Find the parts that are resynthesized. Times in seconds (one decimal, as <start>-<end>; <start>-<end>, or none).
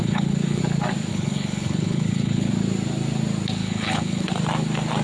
0.0-0.6; 1.1-2.5; 3.6-4.3